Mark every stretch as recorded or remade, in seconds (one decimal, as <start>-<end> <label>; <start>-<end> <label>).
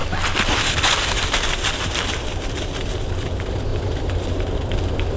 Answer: 0.0-3.1 remade; 3.1-3.7 recorded; 3.7-4.8 remade; 4.8-5.2 recorded